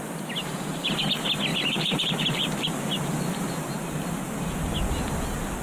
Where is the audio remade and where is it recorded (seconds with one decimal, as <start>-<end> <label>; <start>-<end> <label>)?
0.0-0.5 recorded; 0.5-1.0 remade; 1.0-1.5 recorded; 1.5-4.7 remade; 4.7-5.6 recorded